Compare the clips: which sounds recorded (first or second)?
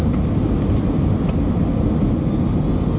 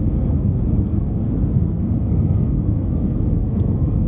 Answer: first